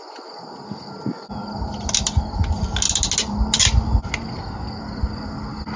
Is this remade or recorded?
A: recorded